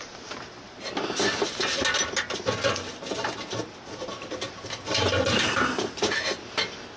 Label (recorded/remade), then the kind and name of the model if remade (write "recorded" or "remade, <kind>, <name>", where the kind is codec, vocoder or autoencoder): recorded